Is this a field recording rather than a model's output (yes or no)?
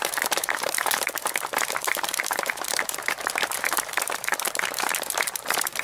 no